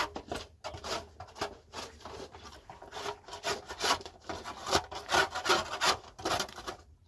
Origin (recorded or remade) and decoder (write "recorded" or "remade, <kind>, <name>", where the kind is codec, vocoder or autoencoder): recorded